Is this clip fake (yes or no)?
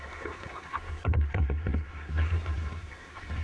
yes